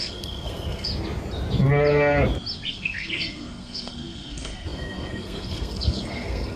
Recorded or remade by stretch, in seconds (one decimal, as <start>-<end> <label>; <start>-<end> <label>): 0.0-0.9 remade; 0.9-2.7 recorded; 2.7-6.6 remade